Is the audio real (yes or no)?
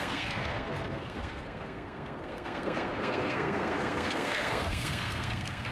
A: no